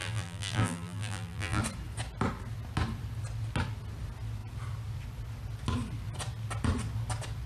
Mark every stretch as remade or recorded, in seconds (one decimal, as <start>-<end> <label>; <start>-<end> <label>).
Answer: 0.0-1.6 remade; 1.6-7.5 recorded